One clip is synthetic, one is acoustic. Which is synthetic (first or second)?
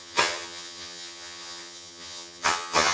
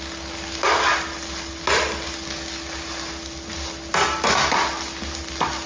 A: first